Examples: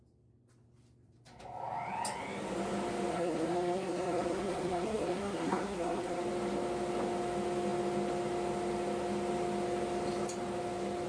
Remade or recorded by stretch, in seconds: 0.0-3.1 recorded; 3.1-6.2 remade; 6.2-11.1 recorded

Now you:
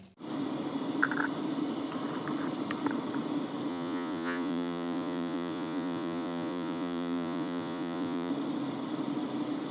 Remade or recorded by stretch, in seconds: 0.0-3.7 recorded; 3.7-8.3 remade; 8.3-9.7 recorded

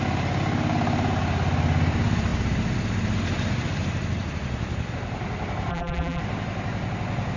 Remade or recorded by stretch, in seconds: 0.0-5.7 recorded; 5.7-6.2 remade; 6.2-7.4 recorded

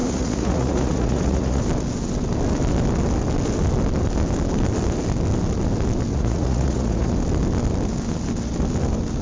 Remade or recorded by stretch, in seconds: 0.0-1.6 remade; 1.6-6.1 recorded; 6.1-7.1 remade; 7.1-9.2 recorded